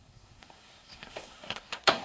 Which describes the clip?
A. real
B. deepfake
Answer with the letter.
B